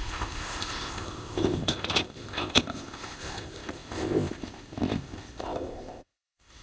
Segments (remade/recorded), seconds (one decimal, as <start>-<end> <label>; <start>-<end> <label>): 0.0-6.6 remade